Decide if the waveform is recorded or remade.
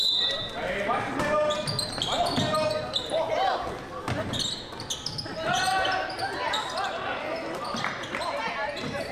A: recorded